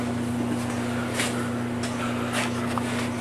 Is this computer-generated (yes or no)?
no